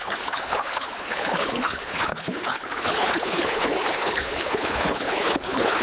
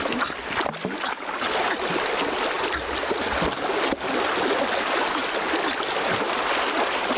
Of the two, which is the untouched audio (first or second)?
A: second